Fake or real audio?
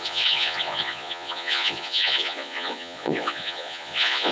fake